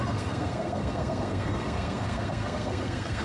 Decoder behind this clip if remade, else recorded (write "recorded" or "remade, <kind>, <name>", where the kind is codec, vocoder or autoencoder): remade, codec, SNAC